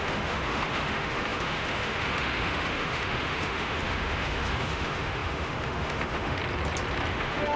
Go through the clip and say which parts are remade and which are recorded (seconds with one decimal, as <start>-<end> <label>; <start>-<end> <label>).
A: 0.0-6.4 remade; 6.4-7.1 recorded; 7.1-7.6 remade